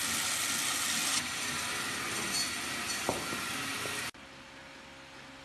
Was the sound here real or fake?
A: real